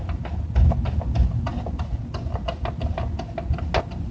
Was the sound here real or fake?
real